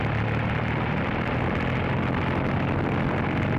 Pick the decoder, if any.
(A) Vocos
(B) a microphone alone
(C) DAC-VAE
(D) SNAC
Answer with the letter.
B